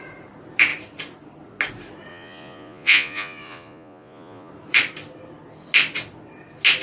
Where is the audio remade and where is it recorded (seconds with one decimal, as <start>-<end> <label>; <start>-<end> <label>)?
0.0-2.1 recorded; 2.1-4.5 remade; 4.5-6.8 recorded